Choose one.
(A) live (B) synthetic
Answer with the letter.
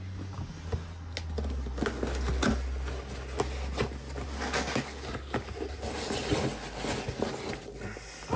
A